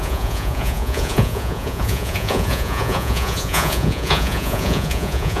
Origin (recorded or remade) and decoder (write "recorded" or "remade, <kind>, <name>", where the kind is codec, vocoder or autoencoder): remade, vocoder, Vocos